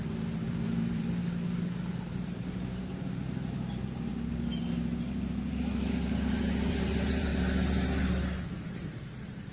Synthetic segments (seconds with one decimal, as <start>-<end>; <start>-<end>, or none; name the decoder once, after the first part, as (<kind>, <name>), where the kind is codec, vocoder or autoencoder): 0.0-1.2 (vocoder, BigVGAN v2); 1.9-4.1; 6.7-7.3; 8.5-9.5